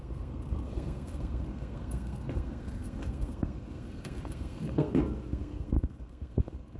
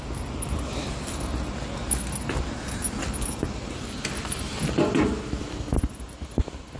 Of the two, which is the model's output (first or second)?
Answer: first